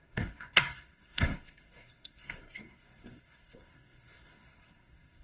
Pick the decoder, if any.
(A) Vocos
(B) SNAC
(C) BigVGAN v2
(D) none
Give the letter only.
B